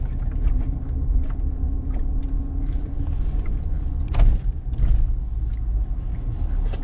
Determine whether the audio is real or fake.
real